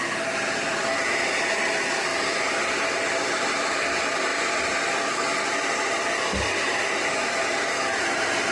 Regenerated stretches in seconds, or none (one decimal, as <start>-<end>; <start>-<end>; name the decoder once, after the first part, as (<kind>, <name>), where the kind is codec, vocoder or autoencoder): none